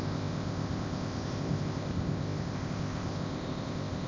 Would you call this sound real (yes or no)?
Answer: no